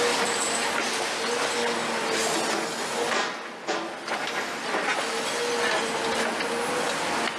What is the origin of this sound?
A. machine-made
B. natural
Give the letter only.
B